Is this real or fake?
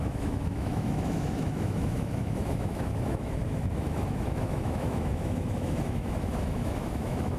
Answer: fake